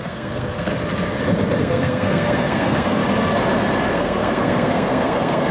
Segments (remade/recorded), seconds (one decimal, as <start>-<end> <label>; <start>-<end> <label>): 0.0-0.7 remade; 0.7-1.6 recorded; 1.6-3.0 remade; 3.0-3.9 recorded; 3.9-5.5 remade